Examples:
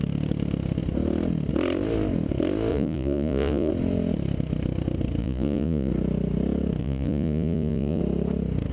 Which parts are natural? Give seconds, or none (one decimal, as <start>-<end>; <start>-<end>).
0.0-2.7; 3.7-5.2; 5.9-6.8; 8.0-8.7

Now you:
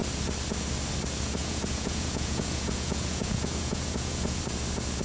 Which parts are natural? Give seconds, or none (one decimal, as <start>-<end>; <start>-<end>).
0.0-1.4; 4.4-5.0

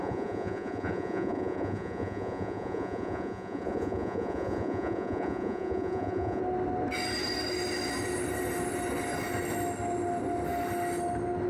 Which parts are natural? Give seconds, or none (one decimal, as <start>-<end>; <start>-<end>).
6.4-11.5